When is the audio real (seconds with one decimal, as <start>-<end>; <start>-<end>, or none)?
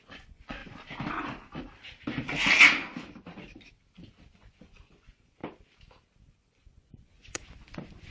0.6-4.3; 5.4-6.3